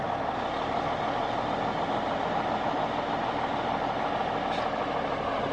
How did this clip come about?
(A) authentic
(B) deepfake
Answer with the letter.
A